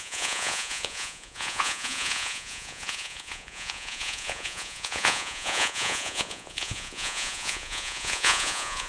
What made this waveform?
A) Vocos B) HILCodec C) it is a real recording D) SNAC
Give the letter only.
A